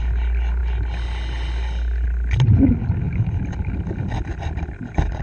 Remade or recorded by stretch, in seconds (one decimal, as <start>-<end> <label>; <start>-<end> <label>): 0.0-5.2 recorded